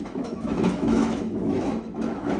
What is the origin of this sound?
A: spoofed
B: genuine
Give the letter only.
A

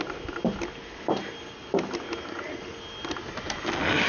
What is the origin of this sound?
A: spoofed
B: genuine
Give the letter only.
B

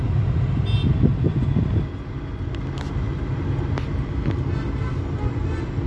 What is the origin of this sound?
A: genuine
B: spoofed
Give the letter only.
A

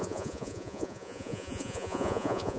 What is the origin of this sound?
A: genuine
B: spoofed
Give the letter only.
B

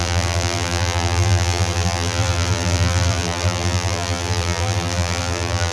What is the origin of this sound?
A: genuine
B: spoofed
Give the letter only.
B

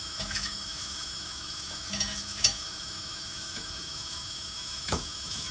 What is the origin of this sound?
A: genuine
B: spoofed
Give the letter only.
B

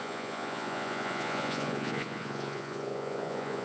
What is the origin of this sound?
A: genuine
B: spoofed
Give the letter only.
B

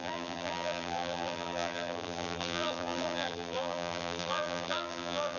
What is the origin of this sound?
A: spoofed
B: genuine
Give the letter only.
A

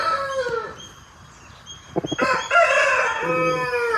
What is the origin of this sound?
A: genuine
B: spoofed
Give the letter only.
A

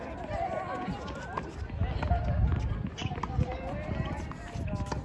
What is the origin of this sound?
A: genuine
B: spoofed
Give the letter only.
A